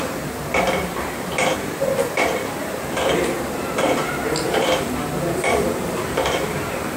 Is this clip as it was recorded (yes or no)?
no